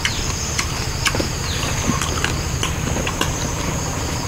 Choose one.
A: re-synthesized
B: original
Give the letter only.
B